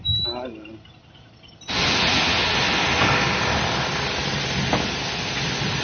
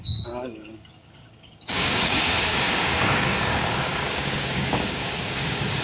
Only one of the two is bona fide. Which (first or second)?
first